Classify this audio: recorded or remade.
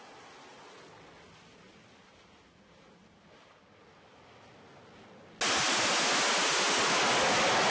recorded